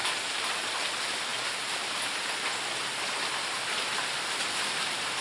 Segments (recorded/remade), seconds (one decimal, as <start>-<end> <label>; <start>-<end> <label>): 0.0-0.7 recorded; 0.7-1.3 remade; 1.3-4.4 recorded; 4.4-5.2 remade